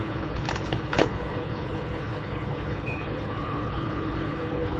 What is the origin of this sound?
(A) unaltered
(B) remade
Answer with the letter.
B